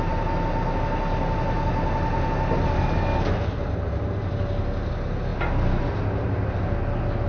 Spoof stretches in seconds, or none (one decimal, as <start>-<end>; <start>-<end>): none